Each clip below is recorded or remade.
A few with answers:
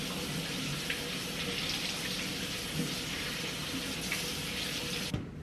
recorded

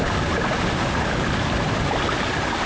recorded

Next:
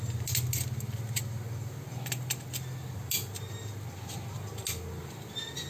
recorded